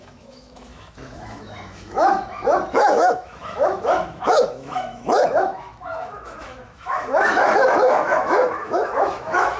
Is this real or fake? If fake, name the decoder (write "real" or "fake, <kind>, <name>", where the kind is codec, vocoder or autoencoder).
fake, autoencoder, DAC-VAE